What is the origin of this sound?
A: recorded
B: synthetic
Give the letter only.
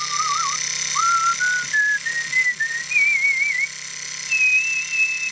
A